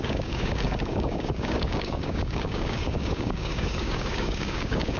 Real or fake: fake